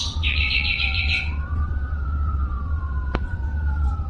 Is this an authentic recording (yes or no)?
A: no